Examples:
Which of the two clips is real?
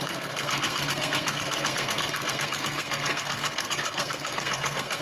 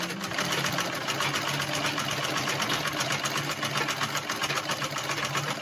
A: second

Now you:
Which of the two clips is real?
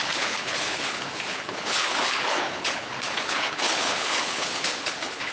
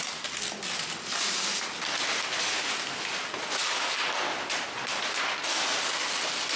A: second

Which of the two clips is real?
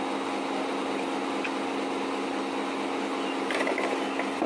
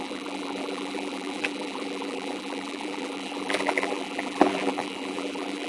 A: first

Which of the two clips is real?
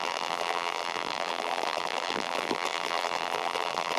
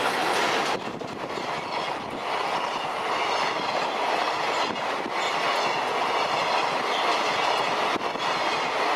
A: second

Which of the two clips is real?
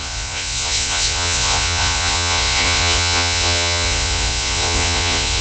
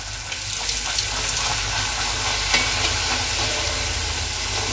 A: second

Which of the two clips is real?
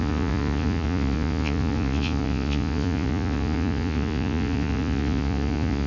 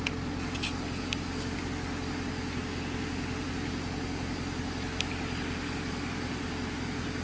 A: second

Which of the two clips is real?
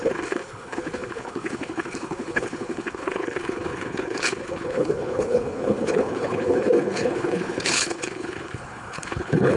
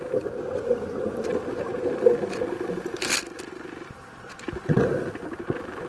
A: second